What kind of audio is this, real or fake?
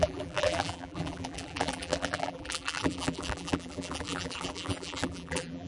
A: fake